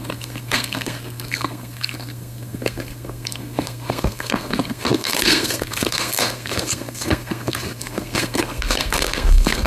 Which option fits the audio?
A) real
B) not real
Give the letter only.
B